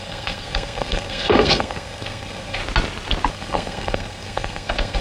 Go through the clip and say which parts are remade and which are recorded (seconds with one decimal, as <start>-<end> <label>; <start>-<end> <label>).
0.0-2.6 remade; 2.6-3.3 recorded; 3.3-5.0 remade